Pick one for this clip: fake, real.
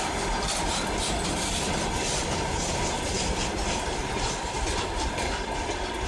real